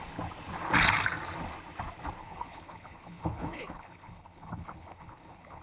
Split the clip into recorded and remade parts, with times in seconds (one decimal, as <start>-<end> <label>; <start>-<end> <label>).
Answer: 0.0-2.2 recorded; 2.2-5.6 remade